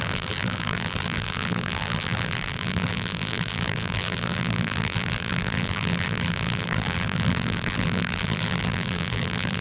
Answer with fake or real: fake